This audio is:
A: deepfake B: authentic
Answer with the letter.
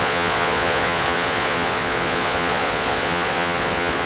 A